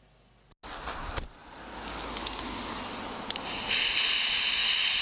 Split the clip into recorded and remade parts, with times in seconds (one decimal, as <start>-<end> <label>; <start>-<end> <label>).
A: 0.0-5.0 recorded